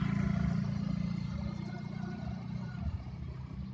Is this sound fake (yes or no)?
no